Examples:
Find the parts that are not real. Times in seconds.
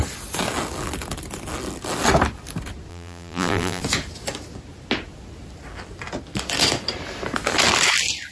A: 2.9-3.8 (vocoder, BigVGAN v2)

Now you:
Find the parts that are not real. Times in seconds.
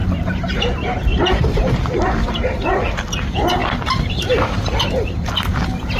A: 0.0-0.5 (vocoder, BigVGAN v2); 1.1-1.7; 3.6-5.3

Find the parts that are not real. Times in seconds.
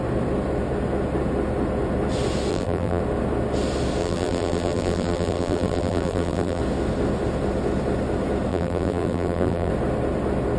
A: 2.5-3.0 (vocoder, BigVGAN v2); 4.0-6.6; 8.5-9.7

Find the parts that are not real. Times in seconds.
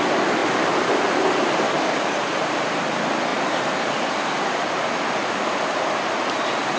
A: 3.3-4.2 (vocoder, BigVGAN v2)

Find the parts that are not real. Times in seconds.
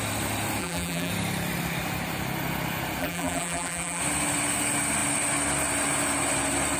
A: 0.6-1.1 (vocoder, BigVGAN v2); 3.0-4.0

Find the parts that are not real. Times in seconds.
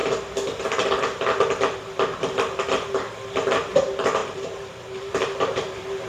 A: 3.7-6.1 (vocoder, BigVGAN v2)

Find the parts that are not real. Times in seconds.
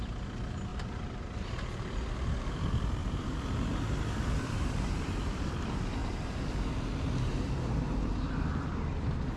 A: 0.7-1.2 (vocoder, BigVGAN v2); 3.0-5.5; 6.0-7.5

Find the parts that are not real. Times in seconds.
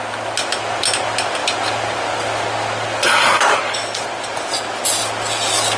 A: none